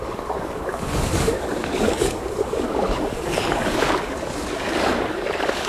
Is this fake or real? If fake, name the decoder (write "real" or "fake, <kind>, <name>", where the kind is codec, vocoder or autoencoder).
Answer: fake, codec, DAC